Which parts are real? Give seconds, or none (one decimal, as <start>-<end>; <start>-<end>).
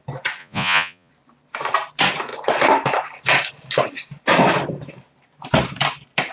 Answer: 0.0-0.4; 1.1-6.3